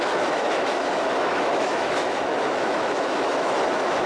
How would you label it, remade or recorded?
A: remade